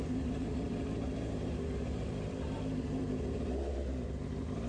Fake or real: fake